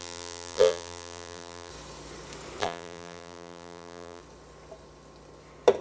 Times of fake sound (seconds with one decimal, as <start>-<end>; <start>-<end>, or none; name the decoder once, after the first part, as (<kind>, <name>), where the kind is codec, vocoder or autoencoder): 0.0-1.7 (vocoder, BigVGAN v2); 2.6-4.2